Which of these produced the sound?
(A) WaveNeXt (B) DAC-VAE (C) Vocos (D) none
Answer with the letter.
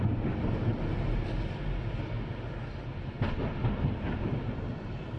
D